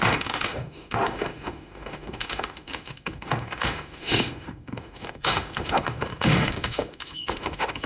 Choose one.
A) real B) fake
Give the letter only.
B